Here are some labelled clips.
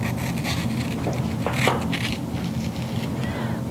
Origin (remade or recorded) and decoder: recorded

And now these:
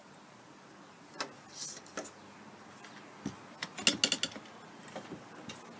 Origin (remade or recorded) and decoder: recorded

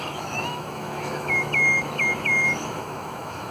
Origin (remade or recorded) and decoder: remade, autoencoder, DAC-VAE